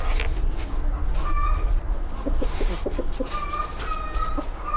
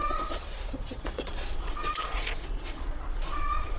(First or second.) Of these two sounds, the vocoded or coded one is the second